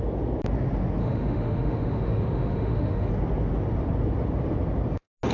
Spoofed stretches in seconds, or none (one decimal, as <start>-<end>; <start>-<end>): 1.0-3.1